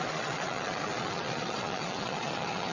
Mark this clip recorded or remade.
remade